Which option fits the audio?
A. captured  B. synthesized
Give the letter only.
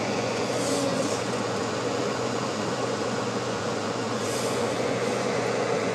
B